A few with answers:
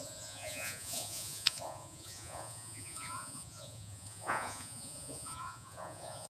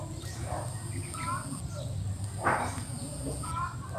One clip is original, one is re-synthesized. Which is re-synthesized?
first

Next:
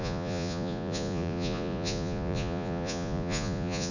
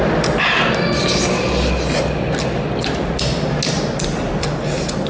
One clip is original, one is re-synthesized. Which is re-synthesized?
first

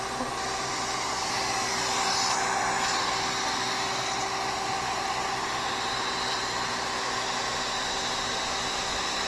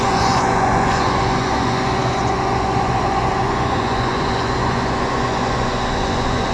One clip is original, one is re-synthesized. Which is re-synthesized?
second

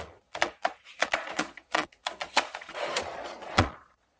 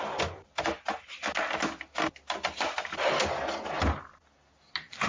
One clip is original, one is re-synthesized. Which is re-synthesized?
first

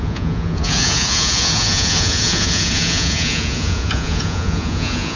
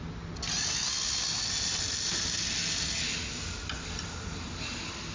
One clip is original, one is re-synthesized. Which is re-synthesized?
first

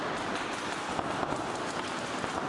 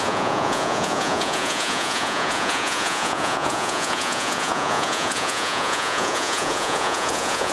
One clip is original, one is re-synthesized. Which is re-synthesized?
second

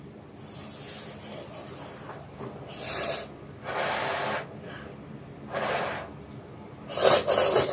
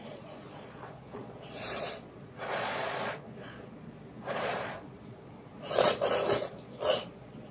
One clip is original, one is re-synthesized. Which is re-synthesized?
second